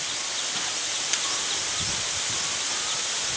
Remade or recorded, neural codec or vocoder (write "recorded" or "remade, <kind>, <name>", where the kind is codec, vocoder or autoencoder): recorded